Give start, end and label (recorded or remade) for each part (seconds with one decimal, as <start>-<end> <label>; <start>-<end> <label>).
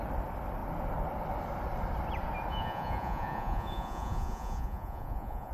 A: 0.0-2.5 recorded; 2.5-5.5 remade